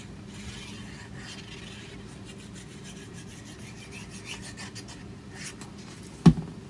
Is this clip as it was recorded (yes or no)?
yes